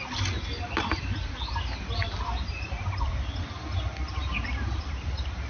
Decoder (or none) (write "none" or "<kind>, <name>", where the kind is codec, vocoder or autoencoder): none